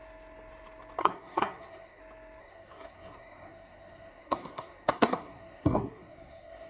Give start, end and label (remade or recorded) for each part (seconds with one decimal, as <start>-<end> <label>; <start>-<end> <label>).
0.0-1.0 recorded; 1.0-2.0 remade; 2.0-2.4 recorded; 2.4-6.7 remade